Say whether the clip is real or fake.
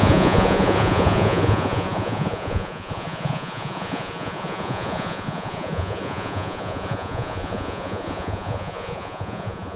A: fake